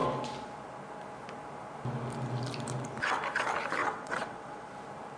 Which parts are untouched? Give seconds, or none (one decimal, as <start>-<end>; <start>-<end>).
0.0-3.8; 4.7-5.2